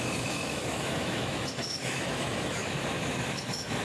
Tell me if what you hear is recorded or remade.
remade